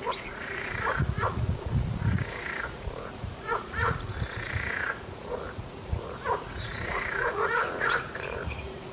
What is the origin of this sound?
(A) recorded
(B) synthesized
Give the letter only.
B